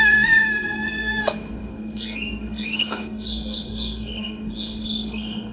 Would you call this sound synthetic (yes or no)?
yes